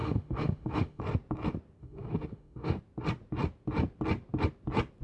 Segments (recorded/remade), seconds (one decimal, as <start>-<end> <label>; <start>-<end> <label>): 0.0-1.0 remade; 1.0-1.8 recorded; 1.8-2.8 remade; 2.8-5.0 recorded